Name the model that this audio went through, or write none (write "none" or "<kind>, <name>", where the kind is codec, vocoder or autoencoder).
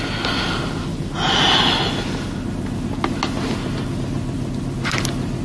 none